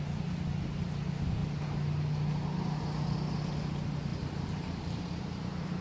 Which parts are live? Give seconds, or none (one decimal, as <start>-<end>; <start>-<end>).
0.0-4.1